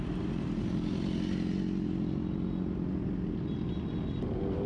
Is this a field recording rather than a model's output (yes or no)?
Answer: yes